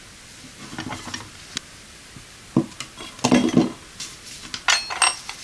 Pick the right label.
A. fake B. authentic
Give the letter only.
B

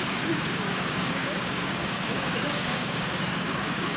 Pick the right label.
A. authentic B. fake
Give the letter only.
B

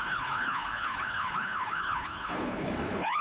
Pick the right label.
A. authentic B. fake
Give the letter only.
B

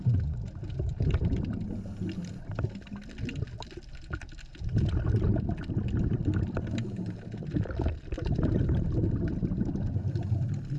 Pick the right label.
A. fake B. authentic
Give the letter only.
B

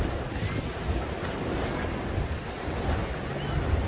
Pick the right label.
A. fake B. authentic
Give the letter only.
B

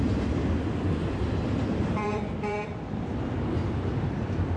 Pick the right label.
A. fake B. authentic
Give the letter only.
A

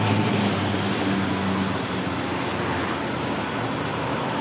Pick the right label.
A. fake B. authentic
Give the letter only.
B